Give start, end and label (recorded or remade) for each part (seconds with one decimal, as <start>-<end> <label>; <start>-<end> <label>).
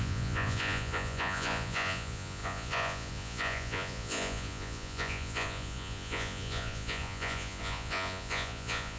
0.0-9.0 remade